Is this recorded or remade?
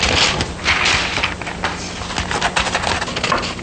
recorded